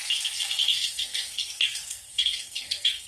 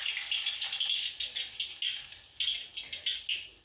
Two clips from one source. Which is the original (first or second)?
second